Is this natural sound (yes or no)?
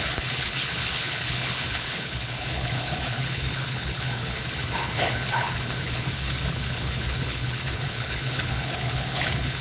no